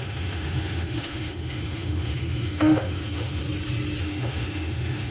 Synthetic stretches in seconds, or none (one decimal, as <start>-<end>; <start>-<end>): 0.0-3.4; 4.0-5.1